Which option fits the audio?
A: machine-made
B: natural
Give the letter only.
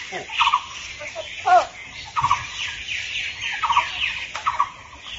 B